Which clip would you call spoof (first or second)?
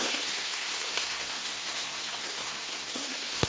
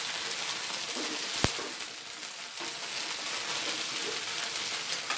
first